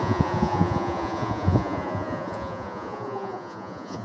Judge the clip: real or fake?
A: fake